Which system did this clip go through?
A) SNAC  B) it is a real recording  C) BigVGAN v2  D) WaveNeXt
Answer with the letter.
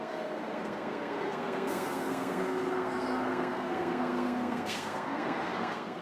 A